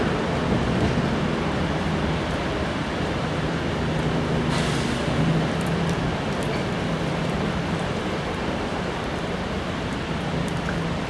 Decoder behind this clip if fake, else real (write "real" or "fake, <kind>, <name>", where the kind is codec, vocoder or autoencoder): fake, vocoder, BigVGAN v2